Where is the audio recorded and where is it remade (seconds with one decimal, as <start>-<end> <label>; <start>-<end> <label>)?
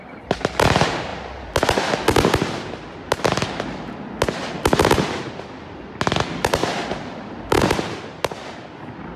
0.0-9.2 recorded